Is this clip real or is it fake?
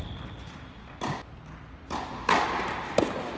real